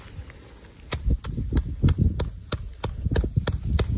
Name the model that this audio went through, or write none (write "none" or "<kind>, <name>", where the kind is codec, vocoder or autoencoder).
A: none